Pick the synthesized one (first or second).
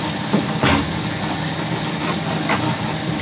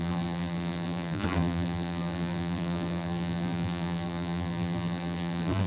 second